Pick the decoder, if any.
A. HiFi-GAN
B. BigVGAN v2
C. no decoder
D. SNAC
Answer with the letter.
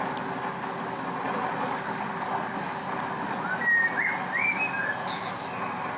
C